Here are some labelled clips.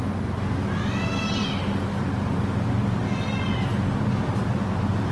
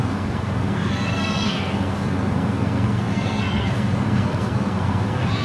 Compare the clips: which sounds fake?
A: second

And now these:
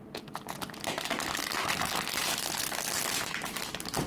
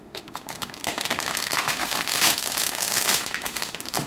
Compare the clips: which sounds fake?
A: second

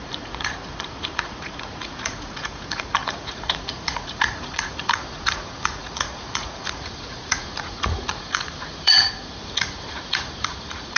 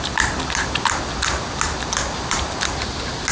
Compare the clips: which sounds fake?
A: first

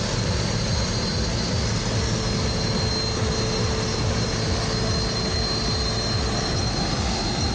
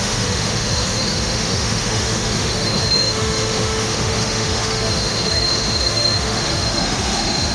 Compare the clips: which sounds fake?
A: second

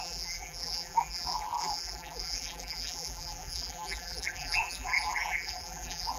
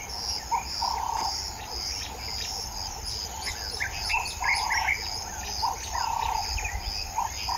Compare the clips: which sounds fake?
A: first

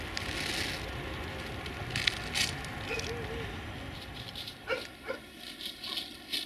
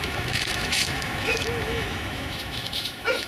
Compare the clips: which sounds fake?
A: second